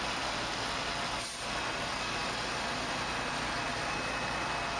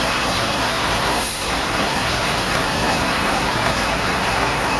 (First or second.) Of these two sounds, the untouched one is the first